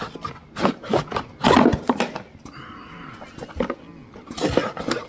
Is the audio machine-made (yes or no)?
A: no